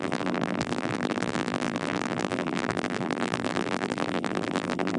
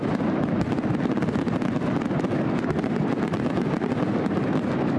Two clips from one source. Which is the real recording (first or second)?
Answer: second